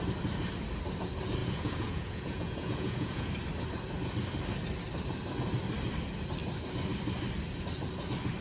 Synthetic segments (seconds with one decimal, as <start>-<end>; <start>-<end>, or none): 1.4-3.3